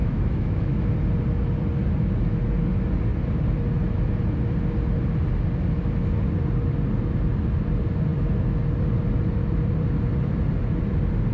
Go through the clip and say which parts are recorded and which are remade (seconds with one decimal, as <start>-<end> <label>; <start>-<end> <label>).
0.0-0.9 remade; 0.9-11.3 recorded